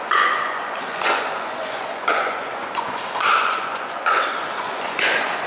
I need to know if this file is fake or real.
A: fake